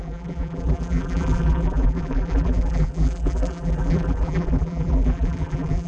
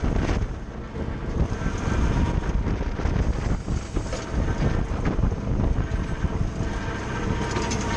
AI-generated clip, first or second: first